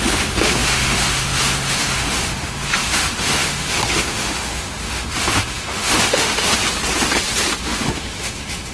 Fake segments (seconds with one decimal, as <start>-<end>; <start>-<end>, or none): 0.0-6.6; 7.6-8.7